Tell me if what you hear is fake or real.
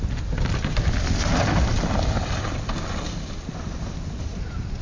real